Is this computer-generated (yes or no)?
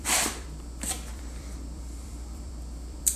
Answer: yes